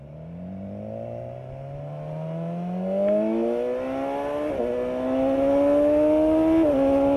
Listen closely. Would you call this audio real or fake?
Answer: real